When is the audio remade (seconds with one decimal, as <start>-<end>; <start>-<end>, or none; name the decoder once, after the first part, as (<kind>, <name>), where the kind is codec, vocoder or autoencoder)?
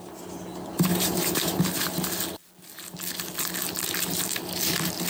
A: 0.9-1.6 (vocoder, BigVGAN v2)